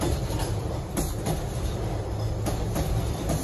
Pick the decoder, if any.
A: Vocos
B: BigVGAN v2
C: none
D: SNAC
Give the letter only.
B